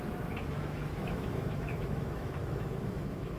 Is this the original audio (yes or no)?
no